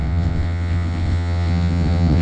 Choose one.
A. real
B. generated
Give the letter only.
B